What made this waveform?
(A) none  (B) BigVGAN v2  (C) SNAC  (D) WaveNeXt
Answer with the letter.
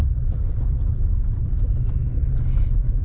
A